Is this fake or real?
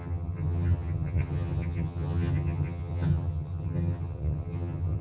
fake